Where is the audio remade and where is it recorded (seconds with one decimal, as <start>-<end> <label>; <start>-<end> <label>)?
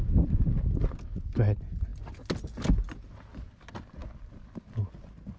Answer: 0.0-5.4 recorded